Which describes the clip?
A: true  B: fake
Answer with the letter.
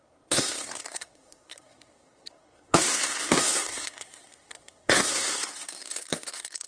B